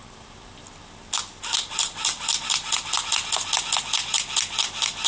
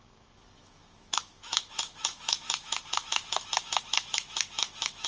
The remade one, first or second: second